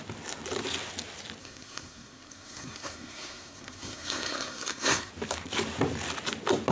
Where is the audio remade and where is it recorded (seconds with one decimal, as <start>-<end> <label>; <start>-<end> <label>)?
0.0-1.4 recorded; 1.4-5.1 remade; 5.1-6.7 recorded